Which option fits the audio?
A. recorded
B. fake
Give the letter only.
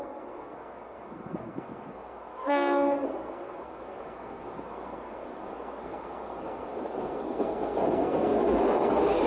B